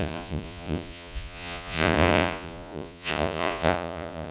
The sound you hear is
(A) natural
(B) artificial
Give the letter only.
B